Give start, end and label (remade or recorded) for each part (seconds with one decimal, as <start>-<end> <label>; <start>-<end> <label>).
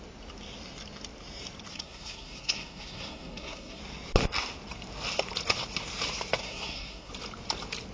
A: 0.0-1.7 recorded; 1.7-3.8 remade; 3.8-6.4 recorded; 6.4-7.1 remade; 7.1-7.9 recorded